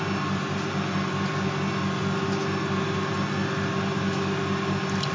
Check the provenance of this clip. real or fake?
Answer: real